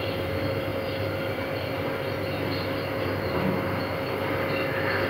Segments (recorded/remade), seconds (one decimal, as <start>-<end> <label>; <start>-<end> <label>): 0.0-5.1 recorded